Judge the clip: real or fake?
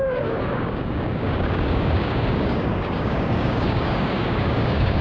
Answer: fake